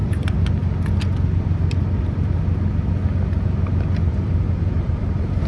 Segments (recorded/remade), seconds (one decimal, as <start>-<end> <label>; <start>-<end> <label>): 0.0-4.1 recorded; 4.1-5.5 remade